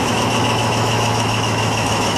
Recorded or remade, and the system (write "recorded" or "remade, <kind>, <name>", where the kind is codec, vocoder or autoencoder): remade, autoencoder, DAC-VAE